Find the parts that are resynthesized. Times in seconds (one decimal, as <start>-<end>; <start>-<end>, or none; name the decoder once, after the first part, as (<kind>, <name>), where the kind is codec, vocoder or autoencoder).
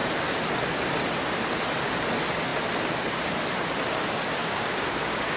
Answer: 4.4-5.4 (codec, DAC)